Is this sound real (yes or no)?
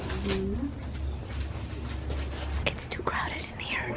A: yes